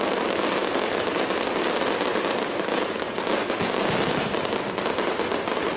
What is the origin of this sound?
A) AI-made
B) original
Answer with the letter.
B